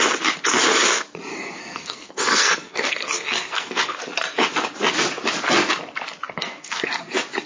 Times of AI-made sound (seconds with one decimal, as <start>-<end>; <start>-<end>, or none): 1.3-4.0; 6.4-7.1